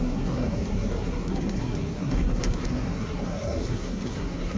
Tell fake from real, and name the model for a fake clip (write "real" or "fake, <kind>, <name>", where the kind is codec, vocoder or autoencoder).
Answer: fake, codec, SNAC